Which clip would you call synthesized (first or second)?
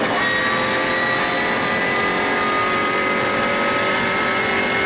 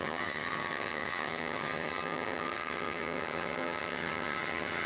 second